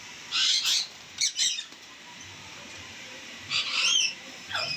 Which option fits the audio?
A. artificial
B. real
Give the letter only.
A